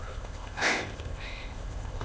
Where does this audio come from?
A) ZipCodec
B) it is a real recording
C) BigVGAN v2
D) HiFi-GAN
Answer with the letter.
A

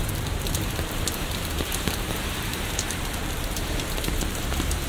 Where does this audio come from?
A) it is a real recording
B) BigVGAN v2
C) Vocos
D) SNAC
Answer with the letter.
B